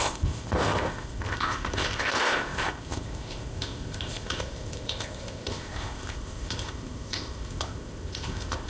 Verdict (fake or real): fake